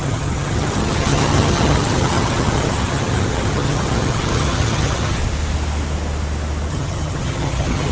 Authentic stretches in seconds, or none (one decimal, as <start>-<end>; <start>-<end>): 5.2-6.7